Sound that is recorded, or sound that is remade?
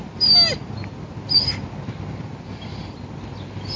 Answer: recorded